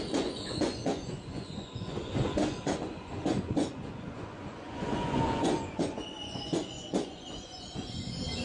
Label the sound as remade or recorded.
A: remade